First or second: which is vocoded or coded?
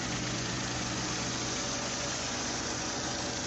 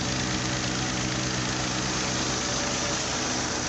first